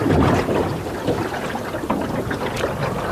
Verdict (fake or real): real